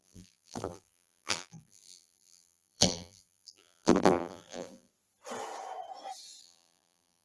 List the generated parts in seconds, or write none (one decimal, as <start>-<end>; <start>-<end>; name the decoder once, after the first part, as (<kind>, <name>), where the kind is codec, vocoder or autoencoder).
0.0-4.9 (vocoder, BigVGAN v2); 6.4-7.2